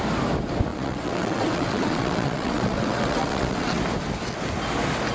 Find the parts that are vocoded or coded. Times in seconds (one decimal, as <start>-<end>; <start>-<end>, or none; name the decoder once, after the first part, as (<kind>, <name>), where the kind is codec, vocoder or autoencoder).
0.7-3.8 (vocoder, WaveNeXt)